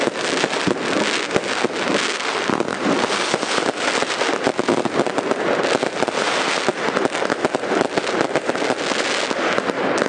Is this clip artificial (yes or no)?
no